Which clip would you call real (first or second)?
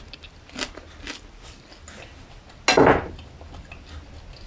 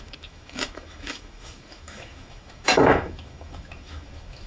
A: first